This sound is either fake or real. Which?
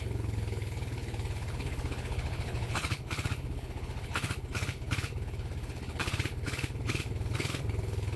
fake